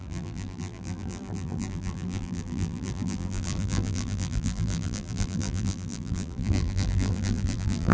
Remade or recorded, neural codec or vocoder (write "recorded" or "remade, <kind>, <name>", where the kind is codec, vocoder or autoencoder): remade, vocoder, BigVGAN v2